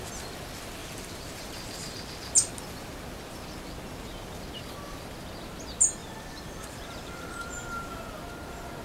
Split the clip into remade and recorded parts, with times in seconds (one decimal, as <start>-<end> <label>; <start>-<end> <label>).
0.0-0.8 recorded; 0.8-2.3 remade; 2.3-6.0 recorded; 6.0-7.9 remade; 7.9-8.8 recorded